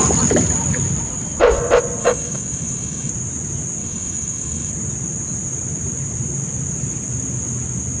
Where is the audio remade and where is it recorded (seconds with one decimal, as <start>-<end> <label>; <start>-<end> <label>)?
0.0-2.0 recorded; 2.0-3.1 remade; 3.1-3.8 recorded; 3.8-4.7 remade; 4.7-8.0 recorded